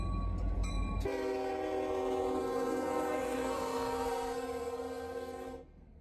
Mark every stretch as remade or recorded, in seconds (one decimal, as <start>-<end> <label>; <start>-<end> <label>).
0.0-2.4 recorded; 2.4-6.0 remade